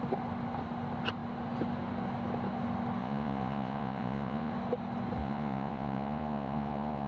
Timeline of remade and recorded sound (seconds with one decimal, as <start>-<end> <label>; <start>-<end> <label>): 0.0-3.0 recorded; 3.0-4.5 remade; 4.5-5.2 recorded; 5.2-7.1 remade